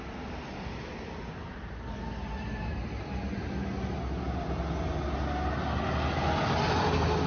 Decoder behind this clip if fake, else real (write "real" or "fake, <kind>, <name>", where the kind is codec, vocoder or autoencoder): real